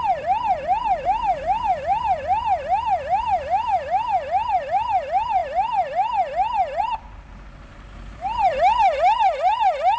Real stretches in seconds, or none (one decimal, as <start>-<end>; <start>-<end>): 2.4-4.5; 5.4-6.8